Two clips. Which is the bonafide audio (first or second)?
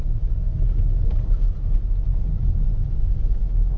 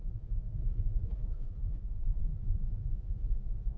first